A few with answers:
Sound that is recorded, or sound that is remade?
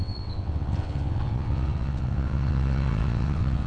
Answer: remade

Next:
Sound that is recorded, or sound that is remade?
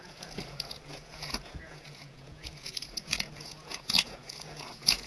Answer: remade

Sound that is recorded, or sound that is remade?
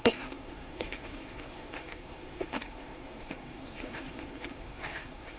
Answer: remade